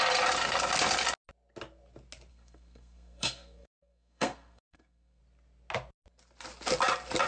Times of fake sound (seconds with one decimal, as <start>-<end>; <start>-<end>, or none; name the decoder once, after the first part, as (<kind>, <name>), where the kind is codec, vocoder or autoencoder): 2.3-5.2 (codec, SNAC)